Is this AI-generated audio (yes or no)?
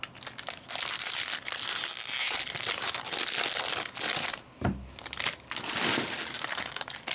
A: no